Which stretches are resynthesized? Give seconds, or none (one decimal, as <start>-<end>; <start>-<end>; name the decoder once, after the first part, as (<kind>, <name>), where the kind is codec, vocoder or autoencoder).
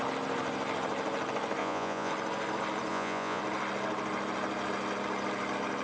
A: 1.6-2.1 (vocoder, Vocos); 2.9-3.4